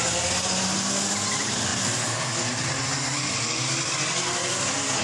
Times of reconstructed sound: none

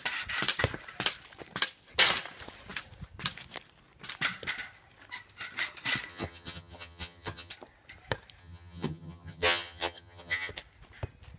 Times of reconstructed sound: 6.1-7.5 (vocoder, HiFi-GAN); 8.4-10.5